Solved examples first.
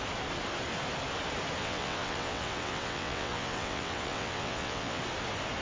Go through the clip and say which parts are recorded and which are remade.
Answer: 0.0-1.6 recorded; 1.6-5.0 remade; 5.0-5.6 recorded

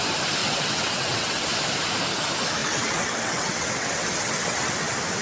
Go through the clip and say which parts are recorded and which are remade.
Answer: 0.0-0.4 recorded; 0.4-1.5 remade; 1.5-2.6 recorded; 2.6-4.7 remade; 4.7-5.2 recorded

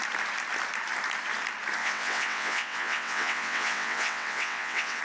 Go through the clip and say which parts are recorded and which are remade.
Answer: 0.0-1.8 recorded; 1.8-5.0 remade

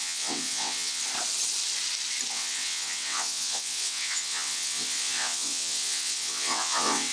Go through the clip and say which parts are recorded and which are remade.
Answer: 0.0-1.0 remade; 1.0-2.3 recorded; 2.3-7.1 remade

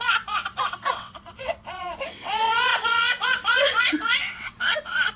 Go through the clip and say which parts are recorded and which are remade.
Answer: 0.0-5.2 remade

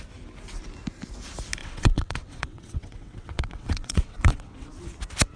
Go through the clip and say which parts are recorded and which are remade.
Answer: 0.0-1.6 recorded; 1.6-4.8 remade; 4.8-5.4 recorded

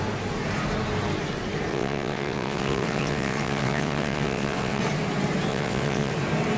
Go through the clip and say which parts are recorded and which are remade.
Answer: 0.0-1.7 recorded; 1.7-4.8 remade; 4.8-5.5 recorded; 5.5-6.1 remade; 6.1-6.6 recorded